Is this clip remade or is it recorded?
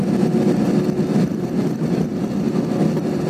recorded